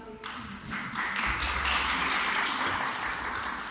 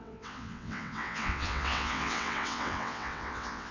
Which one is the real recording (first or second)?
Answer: first